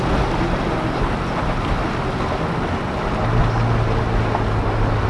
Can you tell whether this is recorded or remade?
recorded